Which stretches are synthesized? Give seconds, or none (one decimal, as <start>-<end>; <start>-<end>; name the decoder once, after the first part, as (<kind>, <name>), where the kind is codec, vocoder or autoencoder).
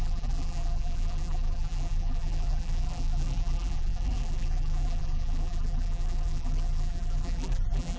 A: 0.0-8.0 (vocoder, BigVGAN v2)